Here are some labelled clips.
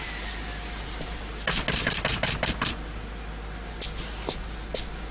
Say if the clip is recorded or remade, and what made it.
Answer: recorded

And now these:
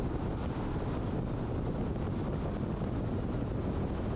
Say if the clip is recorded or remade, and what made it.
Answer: recorded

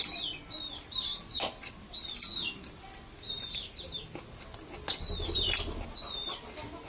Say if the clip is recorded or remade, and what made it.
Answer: recorded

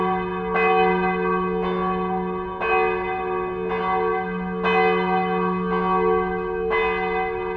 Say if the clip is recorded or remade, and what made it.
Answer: recorded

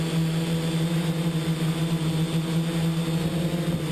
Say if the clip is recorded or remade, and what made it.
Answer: recorded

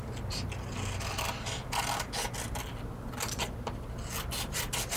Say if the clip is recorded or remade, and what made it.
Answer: recorded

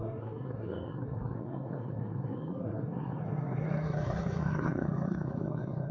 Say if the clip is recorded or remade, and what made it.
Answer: remade, codec, SNAC